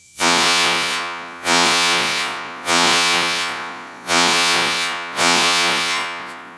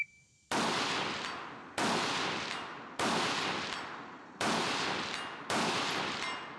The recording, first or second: second